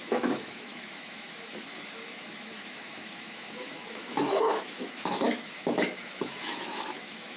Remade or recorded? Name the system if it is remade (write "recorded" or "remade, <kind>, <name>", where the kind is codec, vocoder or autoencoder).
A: remade, autoencoder, DAC-VAE